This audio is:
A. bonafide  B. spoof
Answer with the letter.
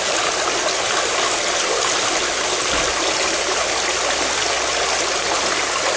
A